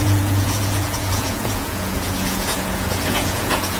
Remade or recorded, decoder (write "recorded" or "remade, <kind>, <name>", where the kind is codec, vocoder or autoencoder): remade, vocoder, Vocos